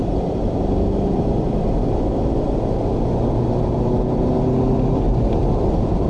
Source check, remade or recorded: recorded